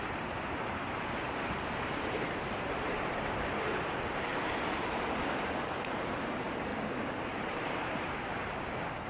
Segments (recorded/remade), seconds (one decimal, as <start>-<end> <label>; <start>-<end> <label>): 0.0-4.3 remade; 4.3-5.9 recorded; 5.9-6.7 remade; 6.7-7.4 recorded; 7.4-9.1 remade